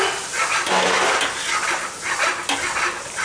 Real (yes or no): yes